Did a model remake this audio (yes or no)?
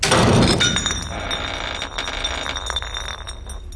no